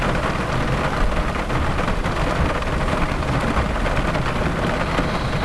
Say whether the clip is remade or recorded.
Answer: recorded